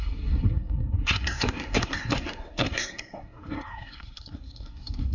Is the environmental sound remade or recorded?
remade